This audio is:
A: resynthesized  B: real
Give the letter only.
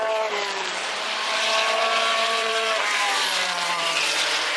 A